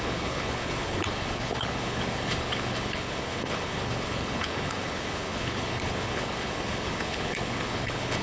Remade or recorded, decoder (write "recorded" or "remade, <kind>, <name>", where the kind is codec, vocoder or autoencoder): remade, codec, HILCodec